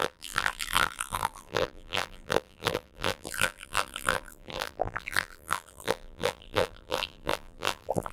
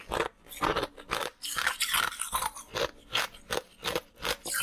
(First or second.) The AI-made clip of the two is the first